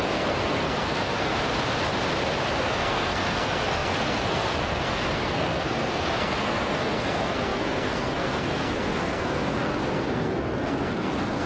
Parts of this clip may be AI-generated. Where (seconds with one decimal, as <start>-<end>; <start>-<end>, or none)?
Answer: 0.0-1.3; 2.6-11.5